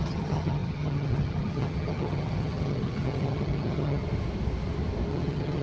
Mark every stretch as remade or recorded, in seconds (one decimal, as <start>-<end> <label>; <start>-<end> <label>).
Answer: 0.0-4.0 remade; 4.0-5.1 recorded; 5.1-5.6 remade